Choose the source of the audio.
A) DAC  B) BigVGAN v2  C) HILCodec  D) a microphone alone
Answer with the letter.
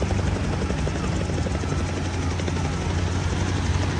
D